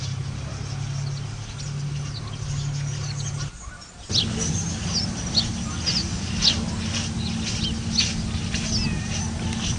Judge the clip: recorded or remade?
recorded